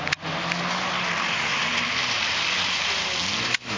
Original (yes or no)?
yes